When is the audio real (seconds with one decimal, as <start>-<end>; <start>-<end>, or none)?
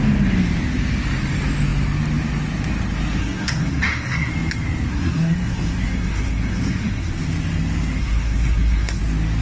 0.0-3.2; 4.3-4.9; 7.1-8.0; 9.0-9.4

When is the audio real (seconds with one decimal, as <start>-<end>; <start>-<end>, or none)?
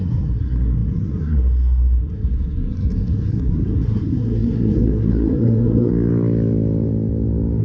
5.9-7.6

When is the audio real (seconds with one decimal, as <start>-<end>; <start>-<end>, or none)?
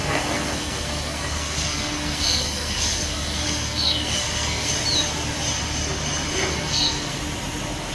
4.7-6.5; 7.2-7.9